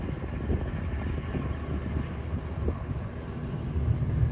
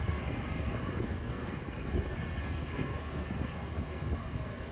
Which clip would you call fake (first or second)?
second